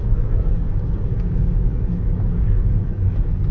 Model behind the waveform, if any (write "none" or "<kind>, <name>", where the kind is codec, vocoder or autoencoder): codec, DAC